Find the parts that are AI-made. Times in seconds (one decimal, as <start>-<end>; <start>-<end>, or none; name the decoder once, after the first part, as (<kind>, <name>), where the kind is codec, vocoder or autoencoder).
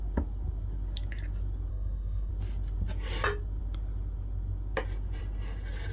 1.7-2.3 (codec, SNAC)